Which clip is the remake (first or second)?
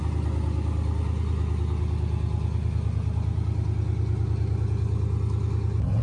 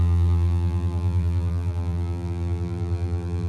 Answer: second